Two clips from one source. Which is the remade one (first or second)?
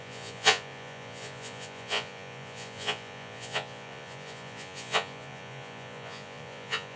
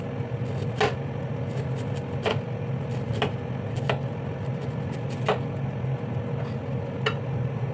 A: first